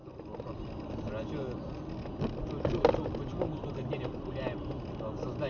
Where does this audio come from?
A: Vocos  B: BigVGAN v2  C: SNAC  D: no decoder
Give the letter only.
D